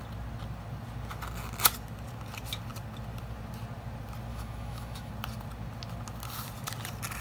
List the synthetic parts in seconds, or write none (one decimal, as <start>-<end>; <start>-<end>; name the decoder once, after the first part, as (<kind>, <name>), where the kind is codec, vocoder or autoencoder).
4.3-5.1 (autoencoder, DAC-VAE)